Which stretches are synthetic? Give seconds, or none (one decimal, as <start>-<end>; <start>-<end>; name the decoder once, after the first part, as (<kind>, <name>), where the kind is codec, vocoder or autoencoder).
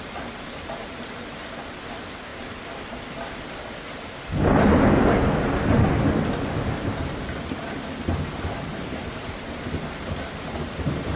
none